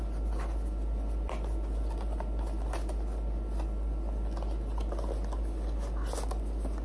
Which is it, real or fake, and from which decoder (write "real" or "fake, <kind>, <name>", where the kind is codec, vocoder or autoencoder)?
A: real